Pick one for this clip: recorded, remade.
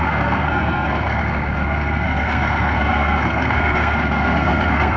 remade